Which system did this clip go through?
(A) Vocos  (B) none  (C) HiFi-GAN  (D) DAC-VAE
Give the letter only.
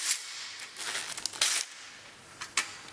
B